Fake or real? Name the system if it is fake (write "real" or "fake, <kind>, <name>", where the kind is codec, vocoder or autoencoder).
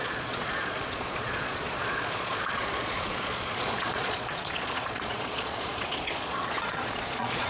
fake, vocoder, Vocos